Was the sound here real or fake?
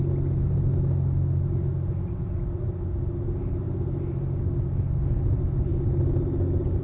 real